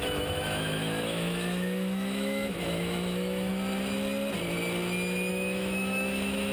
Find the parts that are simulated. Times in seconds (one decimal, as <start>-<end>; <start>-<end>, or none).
0.0-3.5; 5.3-6.5